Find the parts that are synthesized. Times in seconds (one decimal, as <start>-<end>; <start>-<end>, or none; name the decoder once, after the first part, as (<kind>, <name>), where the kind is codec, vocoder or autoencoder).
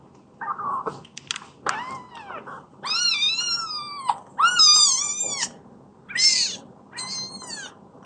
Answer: none